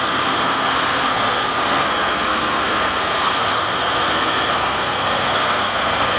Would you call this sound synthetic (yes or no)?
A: yes